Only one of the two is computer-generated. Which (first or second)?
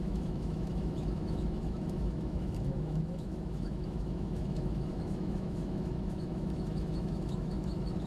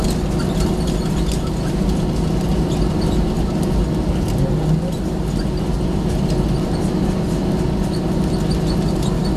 first